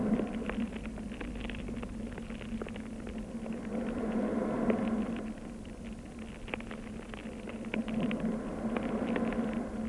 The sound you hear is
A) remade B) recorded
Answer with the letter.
B